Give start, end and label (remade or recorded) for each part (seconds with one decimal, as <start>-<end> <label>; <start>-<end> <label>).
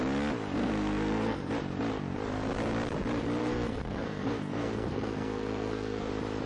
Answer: 0.0-0.6 recorded; 0.6-1.5 remade; 1.5-3.4 recorded; 3.4-6.1 remade; 6.1-6.5 recorded